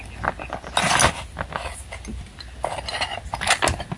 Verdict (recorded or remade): recorded